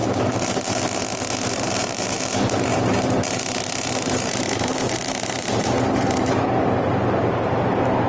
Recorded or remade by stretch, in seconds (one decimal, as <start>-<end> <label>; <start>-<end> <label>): 0.0-1.5 recorded; 1.5-8.1 remade